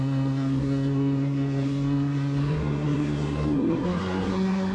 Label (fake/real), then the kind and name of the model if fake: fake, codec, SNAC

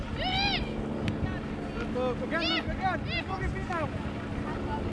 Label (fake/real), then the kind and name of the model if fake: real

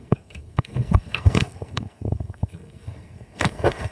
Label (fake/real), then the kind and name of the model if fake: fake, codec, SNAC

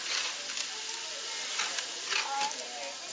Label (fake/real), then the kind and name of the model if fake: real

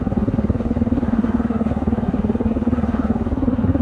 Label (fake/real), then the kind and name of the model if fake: fake, codec, SNAC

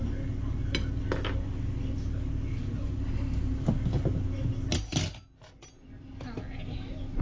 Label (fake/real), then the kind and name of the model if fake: real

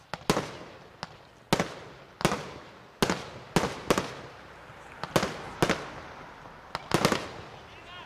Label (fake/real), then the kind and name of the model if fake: real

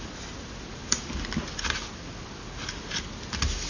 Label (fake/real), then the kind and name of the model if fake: real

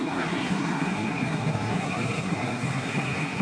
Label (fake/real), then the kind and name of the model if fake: fake, codec, SNAC